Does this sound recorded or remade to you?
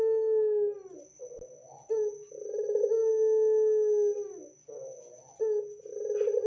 recorded